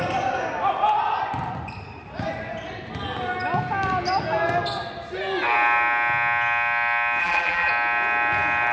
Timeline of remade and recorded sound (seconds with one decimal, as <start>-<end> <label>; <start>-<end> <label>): 0.0-7.2 recorded; 7.2-7.7 remade; 7.7-8.7 recorded